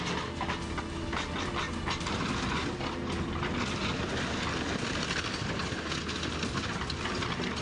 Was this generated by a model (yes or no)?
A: no